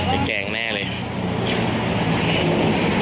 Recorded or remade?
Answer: recorded